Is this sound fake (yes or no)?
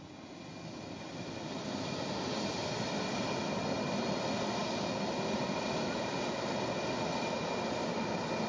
no